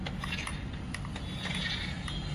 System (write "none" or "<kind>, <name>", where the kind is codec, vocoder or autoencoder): none